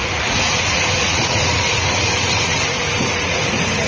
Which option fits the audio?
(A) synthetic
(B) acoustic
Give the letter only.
A